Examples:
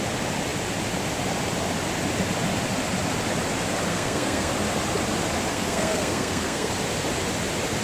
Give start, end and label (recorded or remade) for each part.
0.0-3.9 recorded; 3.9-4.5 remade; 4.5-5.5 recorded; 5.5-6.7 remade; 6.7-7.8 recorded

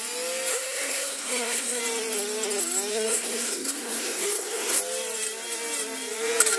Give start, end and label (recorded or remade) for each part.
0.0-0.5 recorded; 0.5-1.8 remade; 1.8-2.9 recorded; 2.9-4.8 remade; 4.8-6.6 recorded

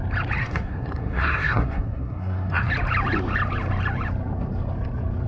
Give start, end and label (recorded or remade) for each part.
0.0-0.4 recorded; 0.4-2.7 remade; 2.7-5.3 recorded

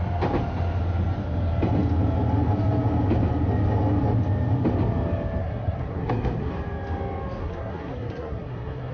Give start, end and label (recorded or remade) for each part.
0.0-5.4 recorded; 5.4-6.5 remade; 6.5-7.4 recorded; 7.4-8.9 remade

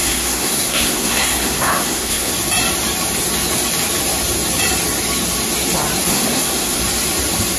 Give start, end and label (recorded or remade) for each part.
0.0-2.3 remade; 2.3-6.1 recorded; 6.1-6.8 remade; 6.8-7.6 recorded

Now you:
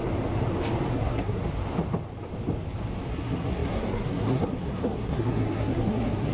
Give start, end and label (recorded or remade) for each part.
0.0-0.9 recorded; 0.9-1.4 remade; 1.4-3.1 recorded; 3.1-6.3 remade